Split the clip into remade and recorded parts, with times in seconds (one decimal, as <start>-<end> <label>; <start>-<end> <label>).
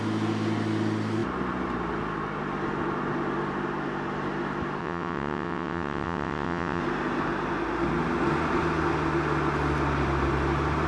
0.0-4.8 recorded; 4.8-6.8 remade; 6.8-10.9 recorded